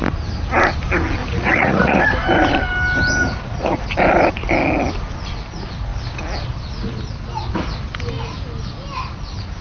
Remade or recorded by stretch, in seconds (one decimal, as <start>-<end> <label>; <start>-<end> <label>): 0.0-1.2 recorded; 1.2-2.0 remade; 2.0-3.2 recorded; 3.2-3.8 remade; 3.8-9.6 recorded